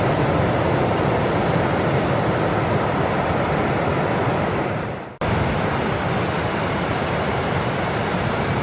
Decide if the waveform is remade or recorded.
recorded